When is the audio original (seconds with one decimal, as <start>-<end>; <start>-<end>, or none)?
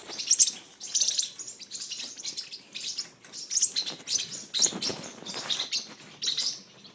0.0-6.9